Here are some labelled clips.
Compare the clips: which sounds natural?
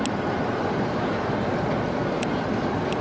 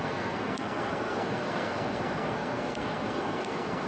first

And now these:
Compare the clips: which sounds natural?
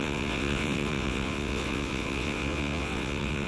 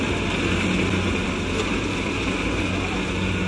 second